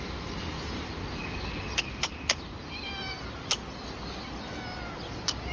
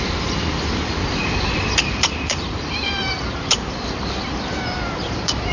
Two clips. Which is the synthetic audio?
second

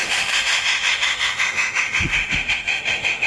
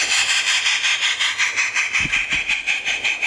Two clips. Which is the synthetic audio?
first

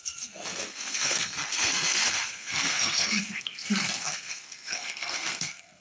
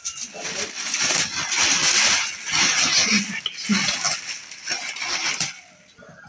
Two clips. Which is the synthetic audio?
first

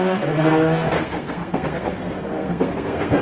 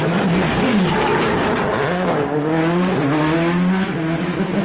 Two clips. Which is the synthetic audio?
first